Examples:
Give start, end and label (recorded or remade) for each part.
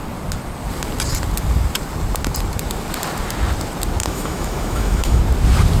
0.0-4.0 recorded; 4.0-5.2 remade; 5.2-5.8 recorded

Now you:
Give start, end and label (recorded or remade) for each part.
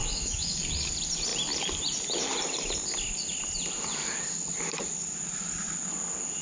0.0-0.6 remade; 0.6-6.4 recorded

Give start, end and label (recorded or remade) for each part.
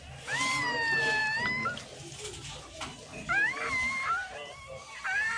0.0-5.4 recorded